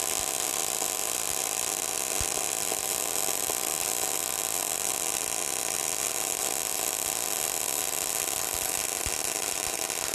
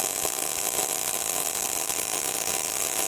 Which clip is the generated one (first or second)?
second